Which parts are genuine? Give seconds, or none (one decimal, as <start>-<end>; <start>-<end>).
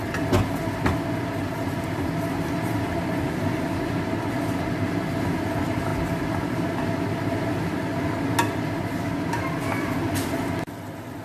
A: 0.0-11.2